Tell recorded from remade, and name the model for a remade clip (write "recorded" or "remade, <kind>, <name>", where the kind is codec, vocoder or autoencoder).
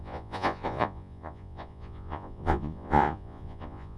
remade, vocoder, Vocos